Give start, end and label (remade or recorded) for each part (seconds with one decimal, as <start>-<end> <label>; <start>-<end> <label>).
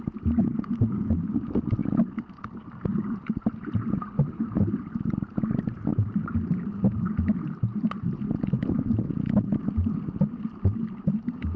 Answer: 0.0-2.9 recorded; 2.9-5.0 remade; 5.0-5.9 recorded; 5.9-7.1 remade; 7.1-11.6 recorded